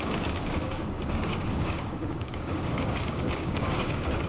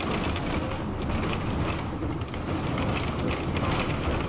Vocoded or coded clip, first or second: first